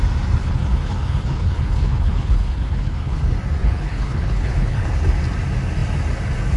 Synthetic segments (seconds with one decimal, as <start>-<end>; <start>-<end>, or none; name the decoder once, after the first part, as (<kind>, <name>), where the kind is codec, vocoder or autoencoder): 0.4-3.2 (codec, HILCodec); 3.6-4.9